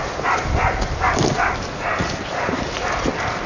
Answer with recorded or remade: recorded